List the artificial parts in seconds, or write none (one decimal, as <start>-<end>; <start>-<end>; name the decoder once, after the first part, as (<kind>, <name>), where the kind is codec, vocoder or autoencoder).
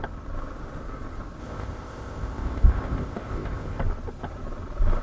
1.4-3.8 (codec, ZipCodec)